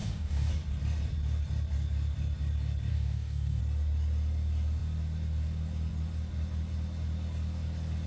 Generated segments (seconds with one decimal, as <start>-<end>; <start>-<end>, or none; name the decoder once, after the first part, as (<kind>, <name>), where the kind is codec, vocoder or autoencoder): 0.0-0.5 (codec, DAC); 2.9-3.6